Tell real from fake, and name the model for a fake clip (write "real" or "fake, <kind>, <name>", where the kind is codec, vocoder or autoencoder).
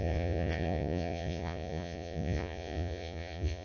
fake, vocoder, Vocos